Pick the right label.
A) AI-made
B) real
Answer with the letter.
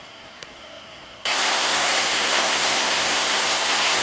A